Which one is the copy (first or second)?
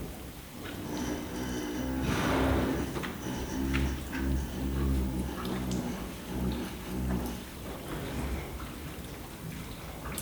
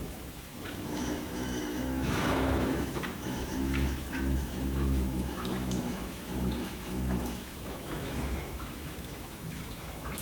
second